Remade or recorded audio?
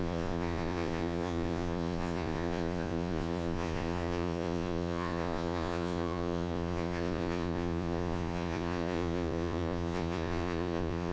remade